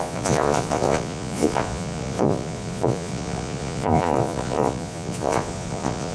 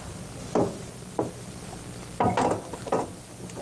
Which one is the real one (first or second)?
second